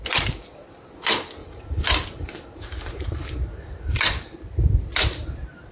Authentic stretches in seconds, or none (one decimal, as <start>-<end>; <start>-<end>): 0.0-1.4; 4.8-5.7